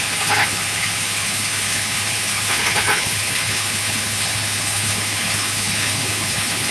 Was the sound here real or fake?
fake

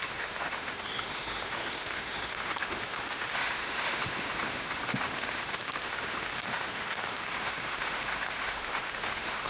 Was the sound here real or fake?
fake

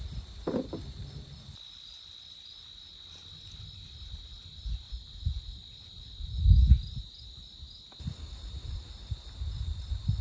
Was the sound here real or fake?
real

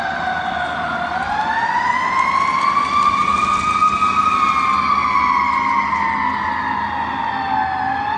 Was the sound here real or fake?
real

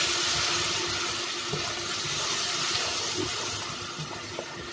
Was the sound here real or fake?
real